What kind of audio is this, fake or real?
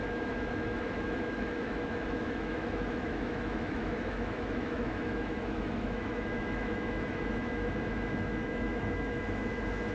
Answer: fake